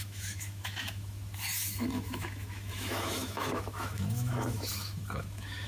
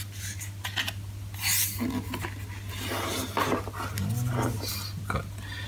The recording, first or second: second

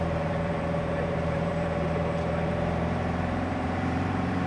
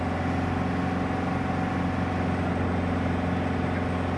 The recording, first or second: second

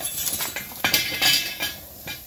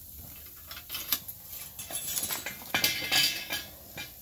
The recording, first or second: second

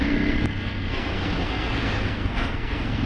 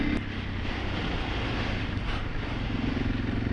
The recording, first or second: second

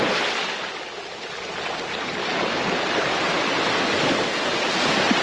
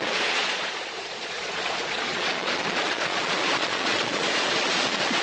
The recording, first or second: first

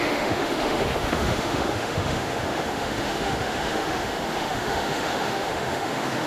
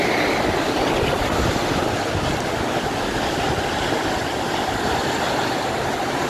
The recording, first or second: second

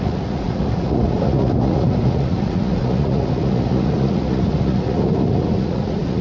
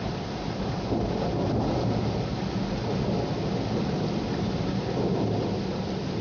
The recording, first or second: second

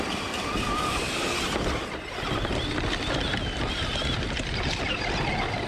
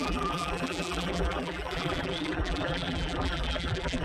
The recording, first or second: first